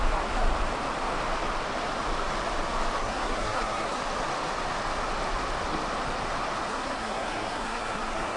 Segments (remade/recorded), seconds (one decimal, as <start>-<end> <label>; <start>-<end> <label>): 0.0-3.0 recorded; 3.0-4.0 remade; 4.0-6.7 recorded; 6.7-8.4 remade